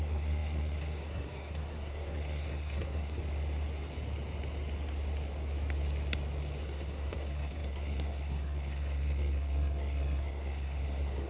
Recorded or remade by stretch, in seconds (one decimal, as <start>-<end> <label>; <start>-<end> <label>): 0.0-3.2 remade; 3.2-6.6 recorded; 6.6-11.3 remade